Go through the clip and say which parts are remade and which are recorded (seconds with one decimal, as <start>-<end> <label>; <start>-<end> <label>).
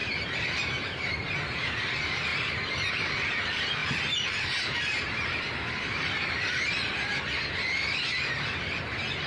0.0-2.3 recorded; 2.3-2.9 remade; 2.9-3.8 recorded; 3.8-7.2 remade; 7.2-9.3 recorded